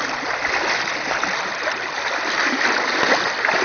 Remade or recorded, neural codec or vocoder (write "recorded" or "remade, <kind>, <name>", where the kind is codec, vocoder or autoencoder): recorded